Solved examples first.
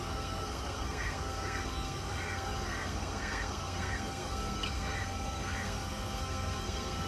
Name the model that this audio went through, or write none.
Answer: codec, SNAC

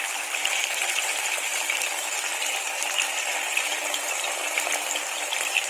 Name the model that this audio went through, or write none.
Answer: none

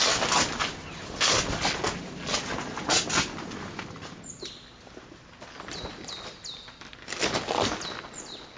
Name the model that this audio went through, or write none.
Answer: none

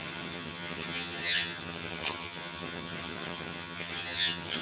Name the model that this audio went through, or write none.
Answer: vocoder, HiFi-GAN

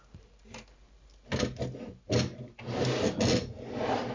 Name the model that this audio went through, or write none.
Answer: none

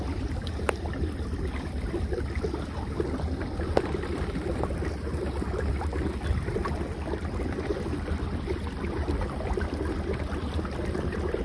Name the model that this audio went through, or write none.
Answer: none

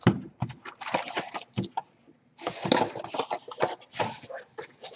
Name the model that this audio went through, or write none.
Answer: none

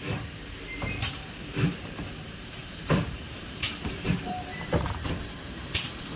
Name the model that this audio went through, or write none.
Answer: vocoder, BigVGAN v2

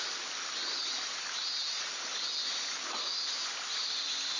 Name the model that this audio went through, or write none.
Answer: none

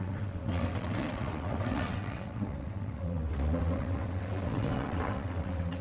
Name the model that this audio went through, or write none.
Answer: vocoder, WaveNeXt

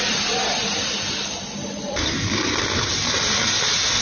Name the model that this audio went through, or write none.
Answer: vocoder, BigVGAN v2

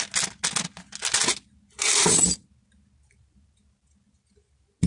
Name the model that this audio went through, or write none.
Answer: none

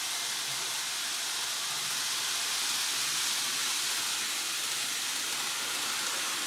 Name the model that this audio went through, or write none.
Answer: none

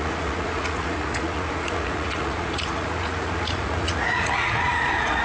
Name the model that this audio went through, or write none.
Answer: vocoder, Vocos